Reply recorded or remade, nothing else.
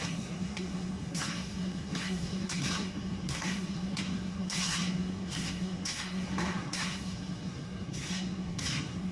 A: remade